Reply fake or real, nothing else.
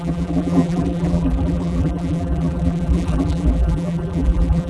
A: fake